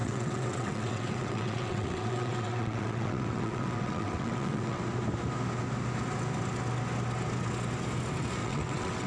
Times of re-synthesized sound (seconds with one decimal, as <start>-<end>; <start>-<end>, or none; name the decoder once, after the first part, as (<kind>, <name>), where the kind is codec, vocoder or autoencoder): 0.0-4.8 (vocoder, WaveNeXt); 8.4-9.1